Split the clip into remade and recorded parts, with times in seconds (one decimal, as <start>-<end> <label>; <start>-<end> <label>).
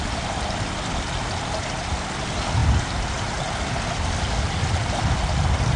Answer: 0.0-5.8 recorded